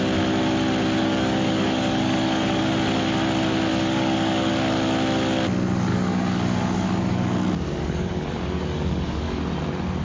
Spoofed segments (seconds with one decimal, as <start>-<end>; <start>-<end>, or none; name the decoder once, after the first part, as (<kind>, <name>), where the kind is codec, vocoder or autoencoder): 1.0-2.6 (codec, DAC); 3.7-4.5; 5.9-9.4